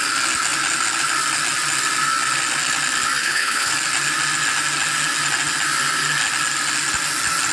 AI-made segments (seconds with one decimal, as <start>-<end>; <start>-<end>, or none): 3.2-3.7